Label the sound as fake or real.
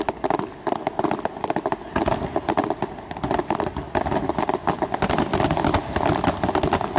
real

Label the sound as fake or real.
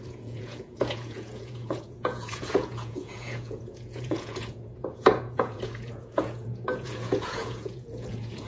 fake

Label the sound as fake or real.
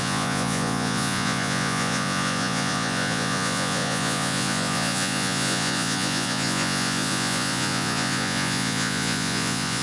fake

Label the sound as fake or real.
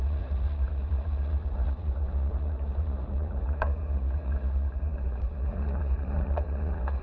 fake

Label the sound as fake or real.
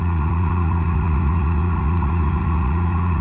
fake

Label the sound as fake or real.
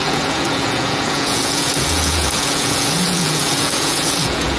fake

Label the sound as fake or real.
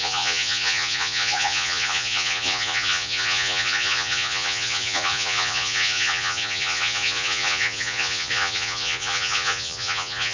fake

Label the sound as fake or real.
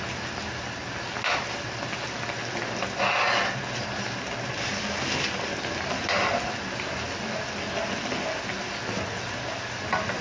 real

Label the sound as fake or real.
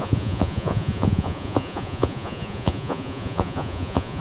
fake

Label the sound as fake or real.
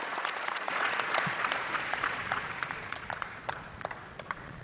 fake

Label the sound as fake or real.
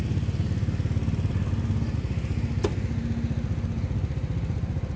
real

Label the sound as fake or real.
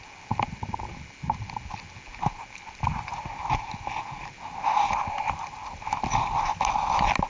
real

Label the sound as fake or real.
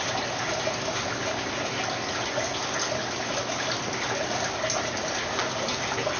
real